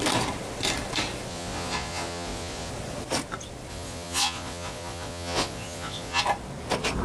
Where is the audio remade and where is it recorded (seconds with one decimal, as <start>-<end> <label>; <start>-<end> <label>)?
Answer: 0.0-1.3 recorded; 1.3-2.7 remade; 2.7-3.7 recorded; 3.7-6.2 remade; 6.2-7.0 recorded